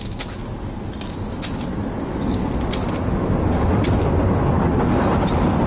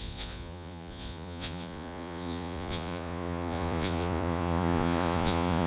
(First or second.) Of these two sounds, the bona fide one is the first